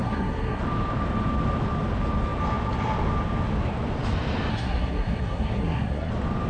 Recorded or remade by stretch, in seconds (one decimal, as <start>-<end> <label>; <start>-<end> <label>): 0.0-0.6 remade; 0.6-4.5 recorded; 4.5-6.1 remade; 6.1-6.5 recorded